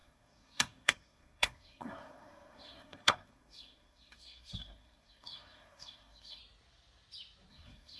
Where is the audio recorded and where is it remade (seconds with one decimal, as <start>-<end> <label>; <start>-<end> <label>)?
0.0-6.4 remade; 6.4-7.5 recorded; 7.5-8.0 remade